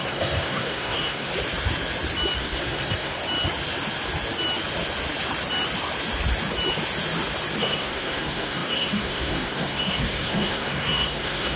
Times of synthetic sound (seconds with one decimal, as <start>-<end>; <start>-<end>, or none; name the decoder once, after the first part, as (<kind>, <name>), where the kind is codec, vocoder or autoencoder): 0.0-1.3 (codec, SNAC); 2.4-3.2; 7.6-11.6